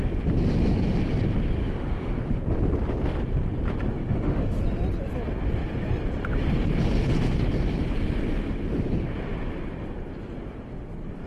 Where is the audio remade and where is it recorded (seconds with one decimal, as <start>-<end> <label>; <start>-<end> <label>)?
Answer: 0.0-1.6 recorded; 1.6-2.4 remade; 2.4-3.9 recorded; 3.9-4.6 remade; 4.6-11.3 recorded